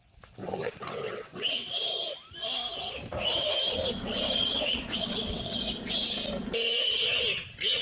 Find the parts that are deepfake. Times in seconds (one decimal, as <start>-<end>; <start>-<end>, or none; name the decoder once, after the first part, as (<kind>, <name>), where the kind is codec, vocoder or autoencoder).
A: 0.4-1.8 (vocoder, WaveNeXt); 4.4-5.6